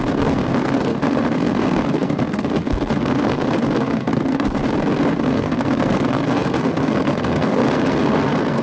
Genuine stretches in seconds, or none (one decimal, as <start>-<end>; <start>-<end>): 4.6-5.2